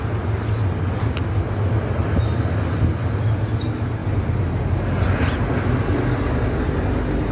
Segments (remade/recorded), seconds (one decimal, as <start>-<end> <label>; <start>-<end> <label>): 0.0-7.3 recorded